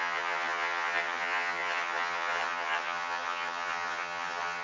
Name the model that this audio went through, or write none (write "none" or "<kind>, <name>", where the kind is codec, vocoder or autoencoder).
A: vocoder, HiFi-GAN